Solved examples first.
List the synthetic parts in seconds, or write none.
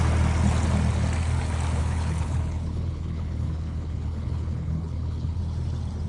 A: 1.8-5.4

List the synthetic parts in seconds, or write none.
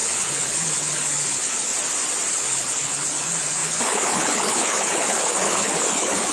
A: 0.0-1.7; 2.3-6.3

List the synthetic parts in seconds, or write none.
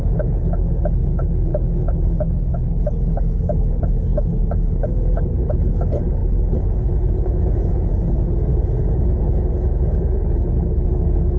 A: 0.0-11.4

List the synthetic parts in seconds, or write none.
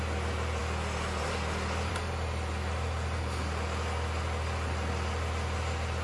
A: none